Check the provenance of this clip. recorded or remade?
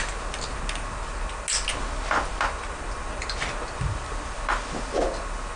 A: recorded